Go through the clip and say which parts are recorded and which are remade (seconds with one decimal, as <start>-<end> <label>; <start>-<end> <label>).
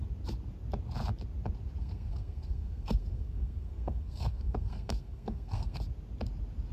0.0-1.8 recorded; 1.8-5.8 remade; 5.8-6.7 recorded